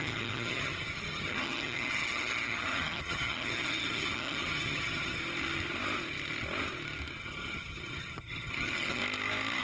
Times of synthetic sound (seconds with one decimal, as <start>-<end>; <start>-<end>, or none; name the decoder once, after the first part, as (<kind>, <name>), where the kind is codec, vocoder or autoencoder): 0.0-5.2 (vocoder, HiFi-GAN); 7.2-9.0